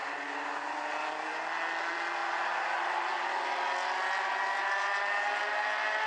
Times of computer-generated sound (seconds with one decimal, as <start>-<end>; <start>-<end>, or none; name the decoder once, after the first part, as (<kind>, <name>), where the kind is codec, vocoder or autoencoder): none